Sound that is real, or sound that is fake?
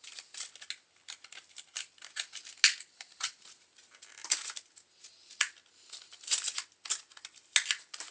real